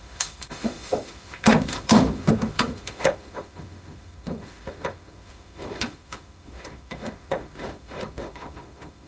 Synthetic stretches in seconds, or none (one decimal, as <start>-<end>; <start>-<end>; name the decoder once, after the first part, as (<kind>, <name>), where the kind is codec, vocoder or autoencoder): 0.0-9.1 (autoencoder, DAC-VAE)

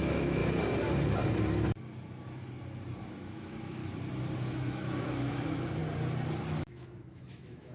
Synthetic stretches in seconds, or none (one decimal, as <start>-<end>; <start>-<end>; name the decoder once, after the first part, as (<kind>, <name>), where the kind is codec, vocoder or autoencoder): 0.0-0.4 (autoencoder, DAC-VAE); 3.1-3.8; 4.5-5.8; 6.6-7.7

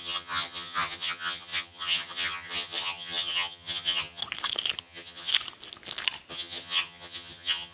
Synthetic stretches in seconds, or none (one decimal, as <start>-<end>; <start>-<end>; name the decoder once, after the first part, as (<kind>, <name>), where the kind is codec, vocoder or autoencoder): 0.0-4.2 (vocoder, HiFi-GAN); 4.8-5.3; 6.3-7.7